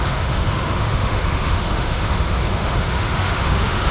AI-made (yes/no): yes